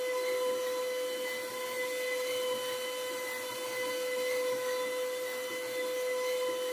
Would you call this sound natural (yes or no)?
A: yes